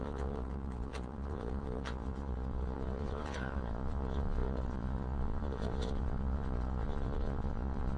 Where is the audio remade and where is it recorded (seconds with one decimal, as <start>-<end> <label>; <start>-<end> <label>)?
0.0-8.0 remade